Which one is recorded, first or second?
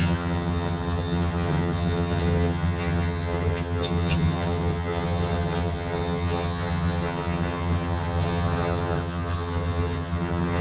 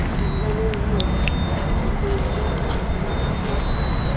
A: second